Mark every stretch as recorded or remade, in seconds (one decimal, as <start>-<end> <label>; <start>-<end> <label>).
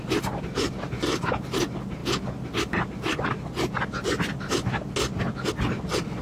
0.0-6.2 recorded